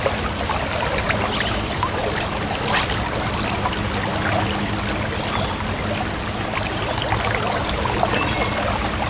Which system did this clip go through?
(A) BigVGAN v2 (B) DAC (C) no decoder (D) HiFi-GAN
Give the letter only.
C